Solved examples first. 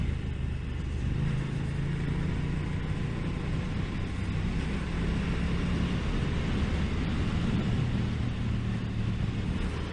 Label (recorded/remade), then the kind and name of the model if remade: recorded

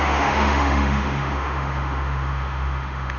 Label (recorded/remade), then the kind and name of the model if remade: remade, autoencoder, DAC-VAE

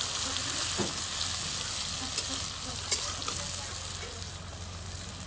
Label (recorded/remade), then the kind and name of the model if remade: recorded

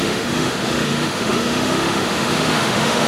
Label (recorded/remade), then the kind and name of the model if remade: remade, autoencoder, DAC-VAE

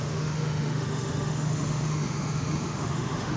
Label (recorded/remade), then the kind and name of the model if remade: remade, autoencoder, DAC-VAE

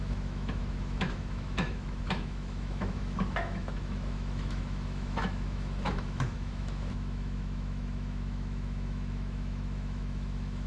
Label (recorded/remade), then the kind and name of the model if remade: remade, autoencoder, DAC-VAE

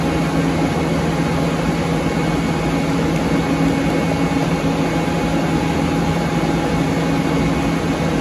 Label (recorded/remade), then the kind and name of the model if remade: recorded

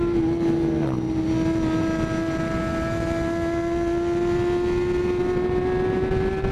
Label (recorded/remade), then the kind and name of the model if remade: recorded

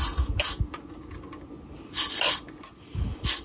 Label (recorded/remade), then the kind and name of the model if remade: recorded